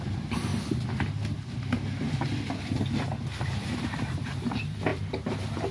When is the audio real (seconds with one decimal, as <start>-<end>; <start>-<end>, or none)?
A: 0.5-1.6; 2.3-3.4